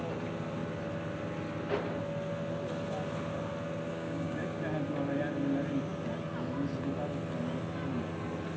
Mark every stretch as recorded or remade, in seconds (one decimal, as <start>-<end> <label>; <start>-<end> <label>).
0.0-3.9 recorded; 3.9-4.6 remade; 4.6-8.6 recorded